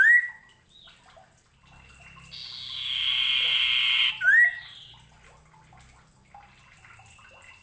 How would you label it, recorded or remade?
recorded